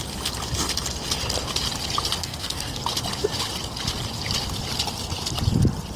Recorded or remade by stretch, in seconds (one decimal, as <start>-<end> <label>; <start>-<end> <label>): 0.0-2.2 recorded; 2.2-2.8 remade; 2.8-6.0 recorded